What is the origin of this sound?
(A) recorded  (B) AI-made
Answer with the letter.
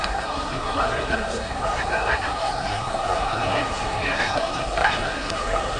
B